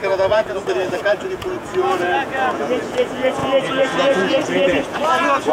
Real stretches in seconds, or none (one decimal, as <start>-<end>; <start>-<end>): none